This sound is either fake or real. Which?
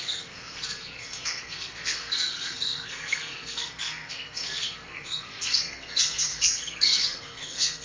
fake